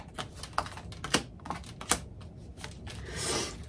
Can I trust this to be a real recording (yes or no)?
yes